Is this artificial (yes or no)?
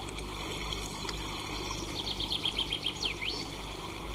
no